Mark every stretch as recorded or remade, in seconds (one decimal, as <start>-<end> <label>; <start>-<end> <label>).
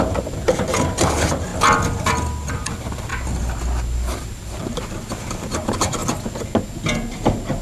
0.0-1.5 remade; 1.5-2.5 recorded; 2.5-3.1 remade; 3.1-4.1 recorded; 4.1-6.0 remade; 6.0-7.6 recorded